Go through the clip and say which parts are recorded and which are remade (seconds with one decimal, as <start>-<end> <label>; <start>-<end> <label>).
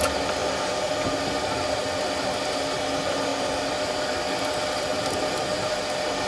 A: 0.0-6.3 recorded